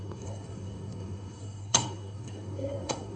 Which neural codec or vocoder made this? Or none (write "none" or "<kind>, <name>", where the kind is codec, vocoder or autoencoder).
codec, SNAC